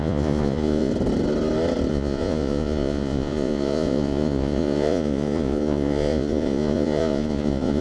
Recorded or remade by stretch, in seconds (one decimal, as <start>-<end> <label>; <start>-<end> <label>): 0.0-0.9 remade; 0.9-1.9 recorded; 1.9-7.8 remade